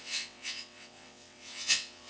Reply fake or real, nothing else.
fake